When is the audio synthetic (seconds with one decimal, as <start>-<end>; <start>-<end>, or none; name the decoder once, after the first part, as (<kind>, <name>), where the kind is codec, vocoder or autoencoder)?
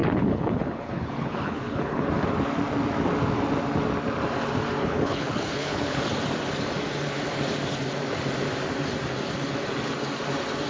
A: 0.0-2.1 (codec, HILCodec); 4.8-6.0